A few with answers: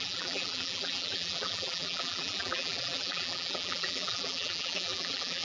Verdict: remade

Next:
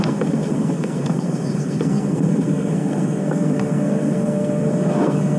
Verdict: remade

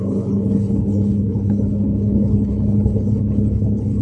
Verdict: remade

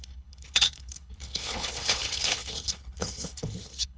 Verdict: remade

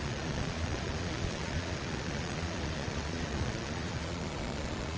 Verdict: remade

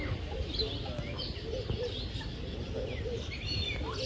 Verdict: recorded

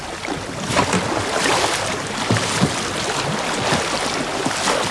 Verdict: recorded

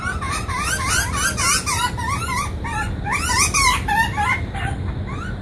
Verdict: recorded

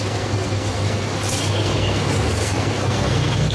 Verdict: remade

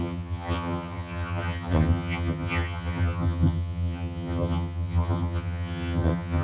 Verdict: remade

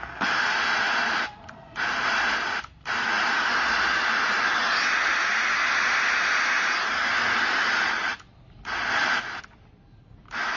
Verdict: recorded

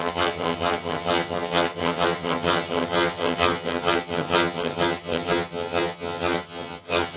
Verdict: remade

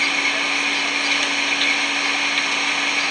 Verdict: recorded